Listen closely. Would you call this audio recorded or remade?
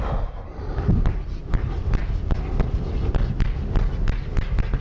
recorded